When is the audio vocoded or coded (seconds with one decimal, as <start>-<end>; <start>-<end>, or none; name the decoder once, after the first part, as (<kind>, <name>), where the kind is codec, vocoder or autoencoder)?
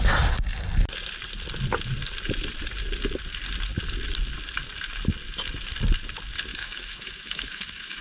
6.5-8.0 (autoencoder, DAC-VAE)